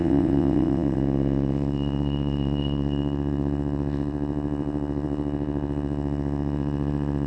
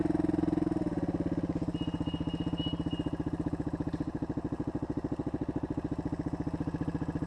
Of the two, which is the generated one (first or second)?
first